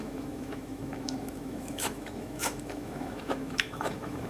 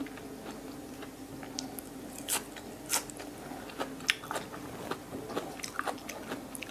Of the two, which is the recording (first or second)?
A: second